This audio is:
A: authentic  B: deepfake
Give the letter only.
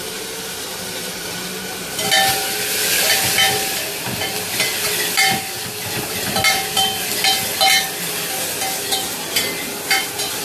A